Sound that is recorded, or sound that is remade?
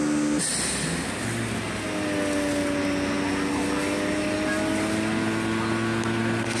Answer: recorded